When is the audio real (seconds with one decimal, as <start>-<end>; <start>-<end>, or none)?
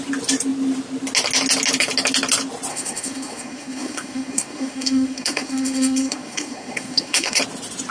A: 0.0-2.7; 7.4-7.9